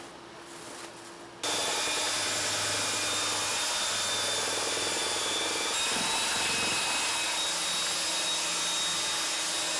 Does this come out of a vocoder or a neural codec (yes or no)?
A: no